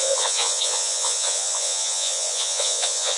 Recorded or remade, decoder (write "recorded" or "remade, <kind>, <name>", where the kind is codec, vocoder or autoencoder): remade, vocoder, Vocos